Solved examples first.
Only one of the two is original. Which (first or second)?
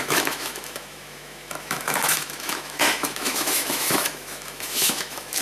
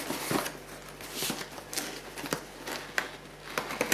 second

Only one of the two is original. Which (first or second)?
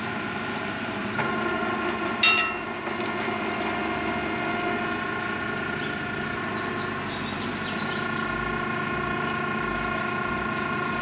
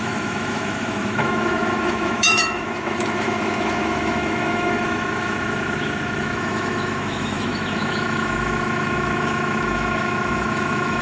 first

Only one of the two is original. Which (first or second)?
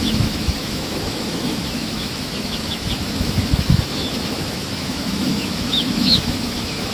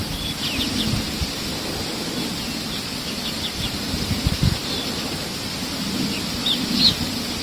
second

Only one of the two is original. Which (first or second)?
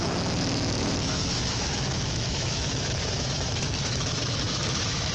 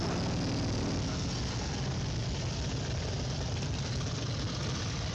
second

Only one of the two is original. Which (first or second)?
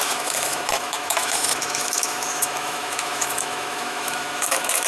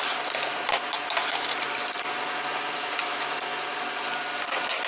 second